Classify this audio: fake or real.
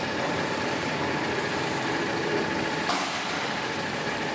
fake